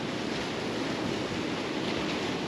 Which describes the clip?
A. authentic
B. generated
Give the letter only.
A